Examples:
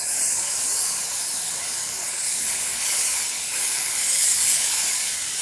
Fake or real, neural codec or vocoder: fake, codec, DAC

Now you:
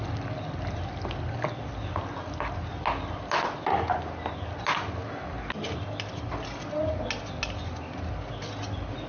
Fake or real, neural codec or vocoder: real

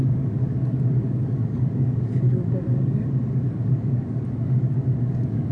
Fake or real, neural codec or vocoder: fake, codec, DAC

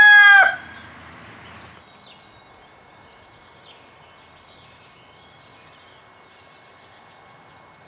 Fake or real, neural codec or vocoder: real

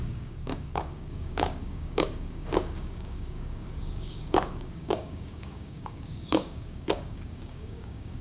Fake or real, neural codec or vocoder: fake, codec, DAC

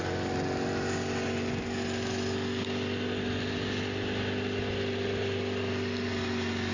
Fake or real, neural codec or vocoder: real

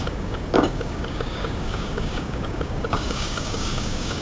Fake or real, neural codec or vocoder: fake, codec, DAC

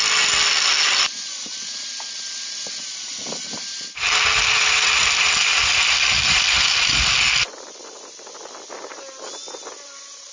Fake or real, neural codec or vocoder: real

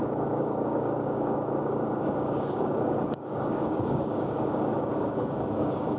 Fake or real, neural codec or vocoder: fake, codec, DAC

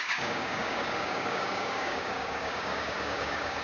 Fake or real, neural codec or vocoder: fake, codec, DAC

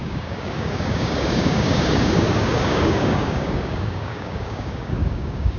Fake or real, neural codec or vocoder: fake, codec, DAC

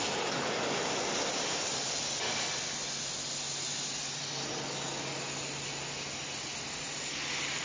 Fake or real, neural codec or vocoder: real